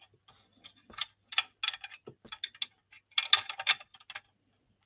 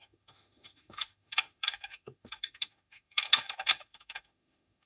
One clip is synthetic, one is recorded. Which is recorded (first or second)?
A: first